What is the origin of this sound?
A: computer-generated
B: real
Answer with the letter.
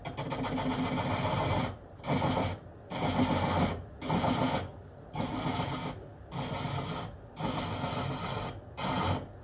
B